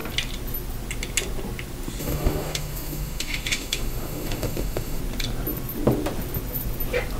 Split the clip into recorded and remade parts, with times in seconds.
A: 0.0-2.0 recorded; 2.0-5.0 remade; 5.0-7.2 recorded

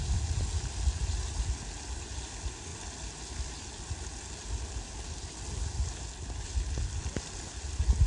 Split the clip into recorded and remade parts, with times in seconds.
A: 0.0-8.1 recorded